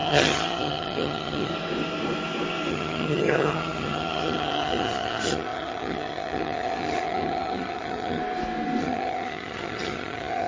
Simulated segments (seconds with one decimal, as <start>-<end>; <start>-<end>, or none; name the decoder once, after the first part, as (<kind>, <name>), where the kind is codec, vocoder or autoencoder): 0.0-1.5 (vocoder, HiFi-GAN); 2.7-8.2; 8.8-10.5